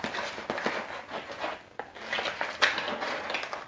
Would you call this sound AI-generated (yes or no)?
no